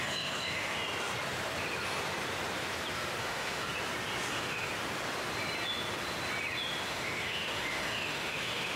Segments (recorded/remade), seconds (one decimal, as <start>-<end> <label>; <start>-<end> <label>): 0.0-0.8 remade; 0.8-3.2 recorded; 3.2-3.7 remade; 3.7-4.3 recorded; 4.3-4.7 remade; 4.7-6.9 recorded; 6.9-8.8 remade